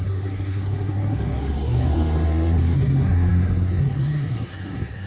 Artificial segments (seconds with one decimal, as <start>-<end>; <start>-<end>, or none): 0.0-5.1